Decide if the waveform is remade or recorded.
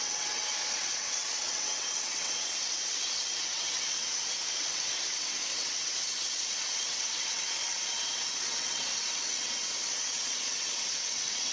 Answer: remade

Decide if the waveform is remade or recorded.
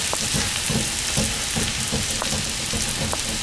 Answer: recorded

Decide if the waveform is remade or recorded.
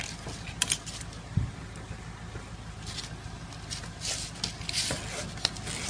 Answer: recorded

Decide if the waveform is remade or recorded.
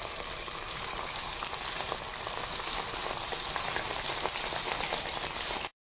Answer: recorded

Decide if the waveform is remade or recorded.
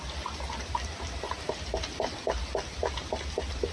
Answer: recorded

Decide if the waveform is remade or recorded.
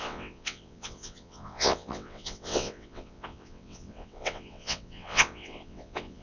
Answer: remade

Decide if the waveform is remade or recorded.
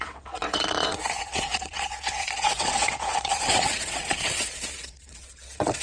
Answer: remade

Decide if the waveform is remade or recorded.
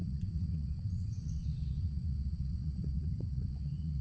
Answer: remade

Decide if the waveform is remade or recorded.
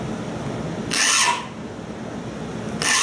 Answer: recorded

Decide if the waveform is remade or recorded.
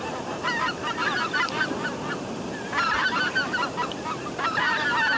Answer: recorded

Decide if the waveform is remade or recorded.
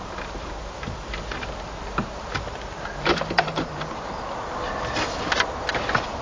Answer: recorded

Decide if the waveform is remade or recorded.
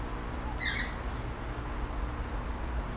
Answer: recorded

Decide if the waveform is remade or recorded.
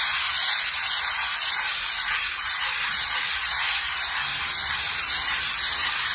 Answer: recorded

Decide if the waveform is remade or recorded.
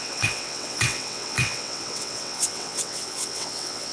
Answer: remade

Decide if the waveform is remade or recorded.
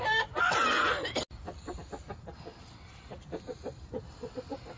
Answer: recorded